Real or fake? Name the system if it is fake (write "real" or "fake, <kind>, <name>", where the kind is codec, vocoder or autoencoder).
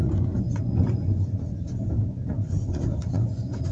fake, vocoder, Vocos